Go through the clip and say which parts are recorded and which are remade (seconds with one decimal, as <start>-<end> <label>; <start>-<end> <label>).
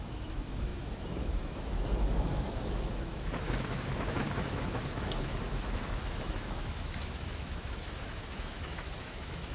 0.0-9.5 remade